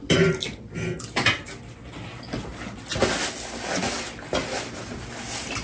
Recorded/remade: recorded